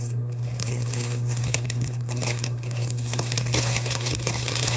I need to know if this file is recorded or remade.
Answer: remade